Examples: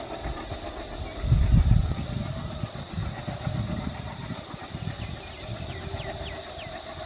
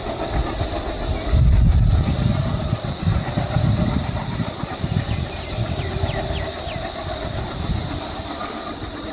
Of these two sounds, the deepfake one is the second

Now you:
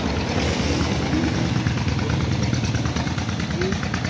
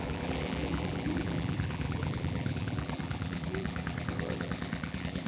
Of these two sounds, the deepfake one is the second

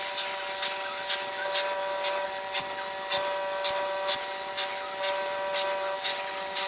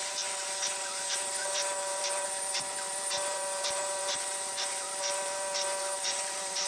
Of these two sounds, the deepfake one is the second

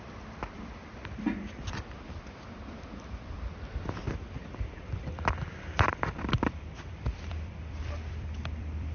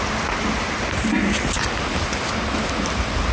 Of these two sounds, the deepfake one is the first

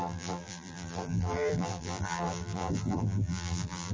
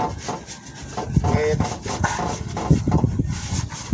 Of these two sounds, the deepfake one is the first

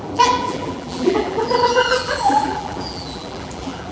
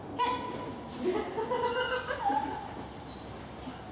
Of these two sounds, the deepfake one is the first